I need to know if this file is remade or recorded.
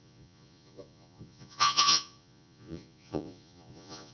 remade